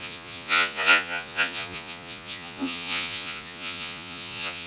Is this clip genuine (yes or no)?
no